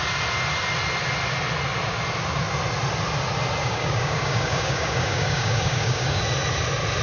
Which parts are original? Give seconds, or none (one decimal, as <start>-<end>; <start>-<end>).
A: 0.0-3.6; 6.2-7.0